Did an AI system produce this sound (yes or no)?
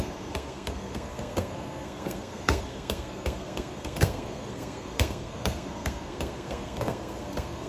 yes